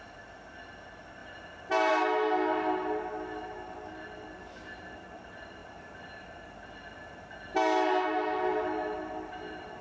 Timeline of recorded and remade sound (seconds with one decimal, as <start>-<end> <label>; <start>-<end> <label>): 0.0-9.8 recorded